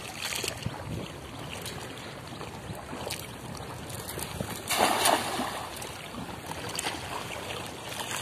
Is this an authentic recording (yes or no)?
yes